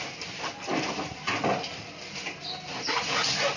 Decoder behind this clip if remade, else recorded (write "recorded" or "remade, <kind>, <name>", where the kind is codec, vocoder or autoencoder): recorded